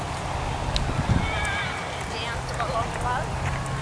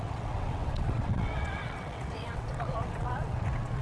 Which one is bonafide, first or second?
first